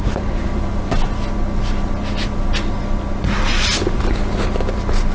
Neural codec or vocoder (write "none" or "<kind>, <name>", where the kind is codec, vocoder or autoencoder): none